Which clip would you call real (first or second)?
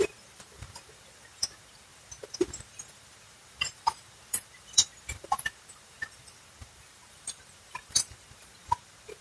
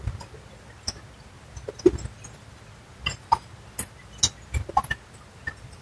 second